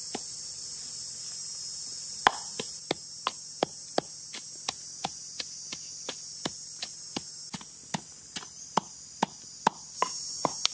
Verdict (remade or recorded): recorded